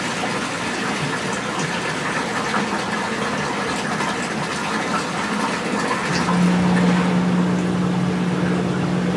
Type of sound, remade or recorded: recorded